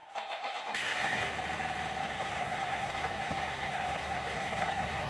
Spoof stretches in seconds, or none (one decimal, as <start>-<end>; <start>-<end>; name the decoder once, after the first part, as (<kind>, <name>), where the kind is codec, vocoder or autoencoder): 0.0-1.3 (codec, SNAC); 2.0-5.1